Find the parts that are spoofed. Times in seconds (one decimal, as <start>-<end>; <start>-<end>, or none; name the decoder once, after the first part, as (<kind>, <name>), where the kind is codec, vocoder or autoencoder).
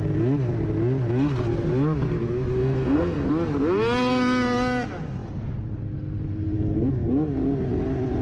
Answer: 2.6-3.3 (codec, SNAC)